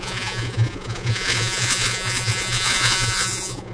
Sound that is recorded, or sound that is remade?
remade